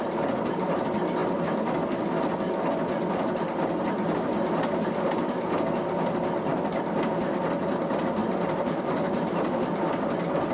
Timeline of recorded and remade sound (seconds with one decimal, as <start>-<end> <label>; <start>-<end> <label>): 0.0-8.2 recorded; 8.2-8.8 remade; 8.8-10.5 recorded

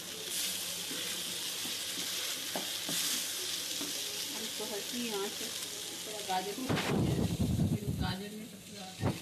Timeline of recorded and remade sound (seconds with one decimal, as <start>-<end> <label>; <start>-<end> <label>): 0.0-1.6 recorded; 1.6-3.2 remade; 3.2-6.6 recorded; 6.6-7.8 remade; 7.8-9.2 recorded

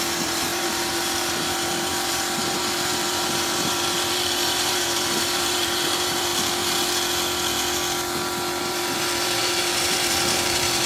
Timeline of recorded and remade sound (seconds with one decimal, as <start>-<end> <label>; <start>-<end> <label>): 0.0-6.3 remade; 6.3-8.6 recorded; 8.6-10.9 remade

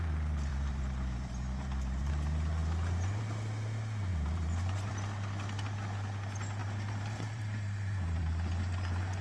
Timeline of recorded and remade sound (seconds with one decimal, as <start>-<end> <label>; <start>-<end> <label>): 0.0-0.5 recorded; 0.5-2.1 remade; 2.1-4.1 recorded; 4.1-4.9 remade; 4.9-6.6 recorded; 6.6-8.2 remade; 8.2-9.2 recorded